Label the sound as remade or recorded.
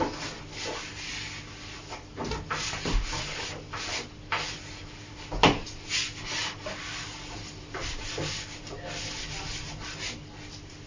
recorded